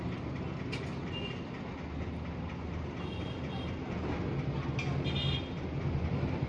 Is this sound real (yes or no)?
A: yes